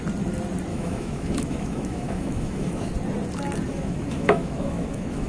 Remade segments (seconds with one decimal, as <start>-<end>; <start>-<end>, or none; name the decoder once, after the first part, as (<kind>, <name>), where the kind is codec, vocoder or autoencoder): 0.7-2.9 (autoencoder, DAC-VAE); 3.7-5.3